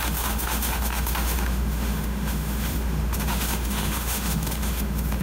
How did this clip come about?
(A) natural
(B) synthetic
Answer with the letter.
B